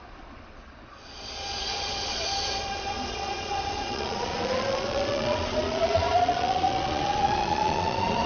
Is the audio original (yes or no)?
no